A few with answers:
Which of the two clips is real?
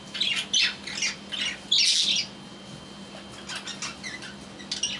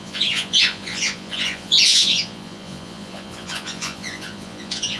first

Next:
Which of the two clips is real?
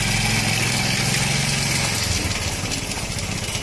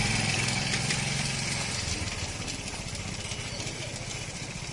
first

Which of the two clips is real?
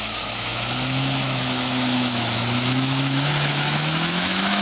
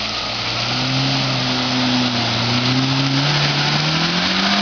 second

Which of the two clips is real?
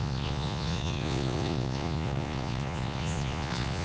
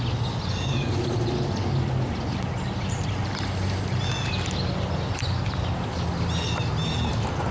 second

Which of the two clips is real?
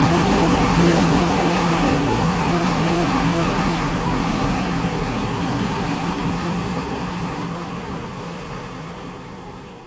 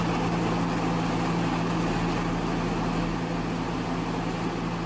second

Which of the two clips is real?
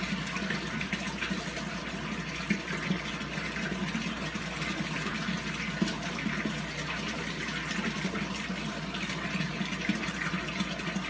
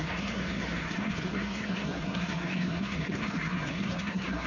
first